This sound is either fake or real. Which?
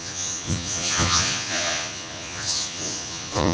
fake